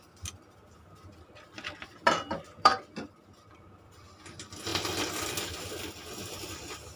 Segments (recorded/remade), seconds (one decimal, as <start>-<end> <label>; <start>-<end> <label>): 0.0-2.7 remade; 2.7-3.5 recorded; 3.5-7.0 remade